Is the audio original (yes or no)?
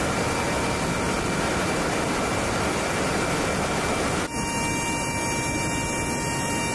yes